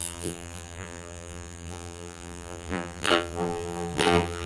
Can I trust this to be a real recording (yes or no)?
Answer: no